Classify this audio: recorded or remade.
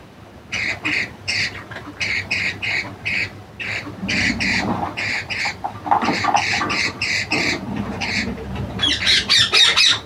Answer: remade